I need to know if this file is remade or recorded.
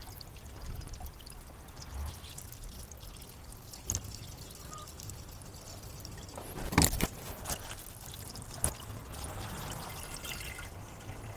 recorded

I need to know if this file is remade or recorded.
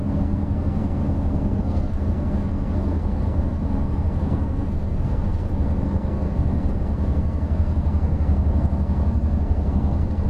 remade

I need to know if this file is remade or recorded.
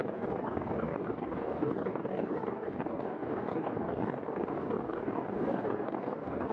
remade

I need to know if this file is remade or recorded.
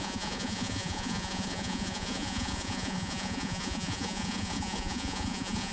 remade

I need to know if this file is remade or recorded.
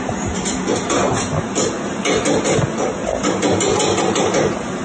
recorded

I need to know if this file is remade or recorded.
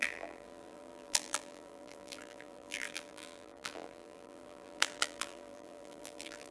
remade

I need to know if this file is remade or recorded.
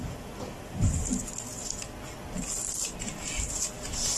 recorded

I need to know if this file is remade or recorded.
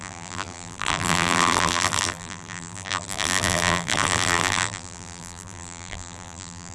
remade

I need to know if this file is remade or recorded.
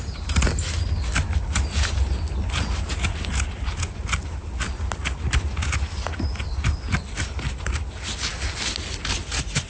recorded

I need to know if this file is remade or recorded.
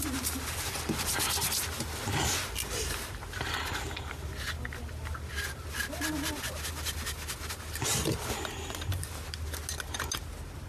recorded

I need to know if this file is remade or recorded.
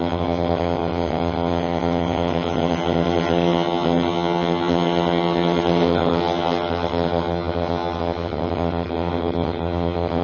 remade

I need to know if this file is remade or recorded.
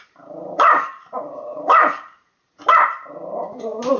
remade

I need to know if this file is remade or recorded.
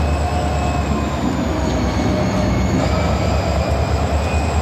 recorded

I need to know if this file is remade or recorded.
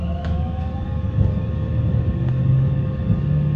remade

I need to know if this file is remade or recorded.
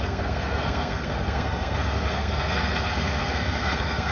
remade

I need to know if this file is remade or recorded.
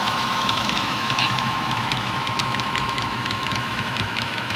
remade